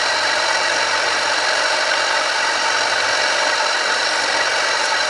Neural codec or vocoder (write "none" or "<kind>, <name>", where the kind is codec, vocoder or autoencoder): none